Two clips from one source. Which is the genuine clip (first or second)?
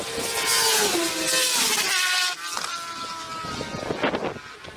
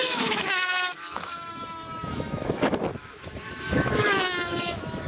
first